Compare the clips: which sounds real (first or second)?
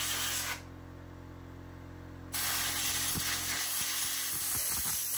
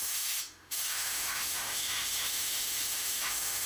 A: first